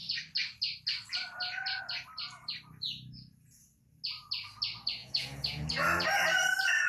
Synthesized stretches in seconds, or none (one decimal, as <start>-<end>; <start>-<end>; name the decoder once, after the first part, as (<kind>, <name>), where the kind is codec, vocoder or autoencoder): 5.0-5.7 (vocoder, Vocos)